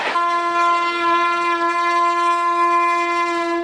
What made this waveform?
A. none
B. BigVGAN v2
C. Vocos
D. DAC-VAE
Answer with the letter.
A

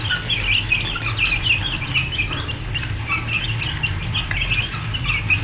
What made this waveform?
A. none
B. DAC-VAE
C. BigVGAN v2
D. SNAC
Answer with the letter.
A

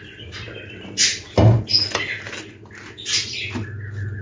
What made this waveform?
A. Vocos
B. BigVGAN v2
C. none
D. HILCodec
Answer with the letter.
C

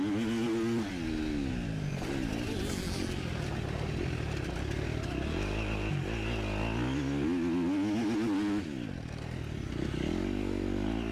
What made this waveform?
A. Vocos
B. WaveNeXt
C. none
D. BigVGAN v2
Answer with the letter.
C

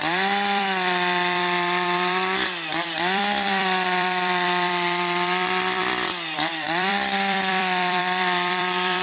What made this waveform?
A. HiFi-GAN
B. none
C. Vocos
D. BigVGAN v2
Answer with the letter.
D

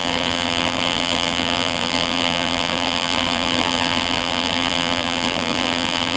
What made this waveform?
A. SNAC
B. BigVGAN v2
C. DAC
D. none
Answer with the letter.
B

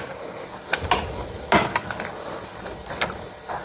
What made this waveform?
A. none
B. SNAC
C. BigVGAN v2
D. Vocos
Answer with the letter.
A